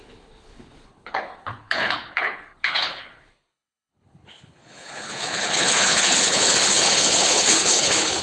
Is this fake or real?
fake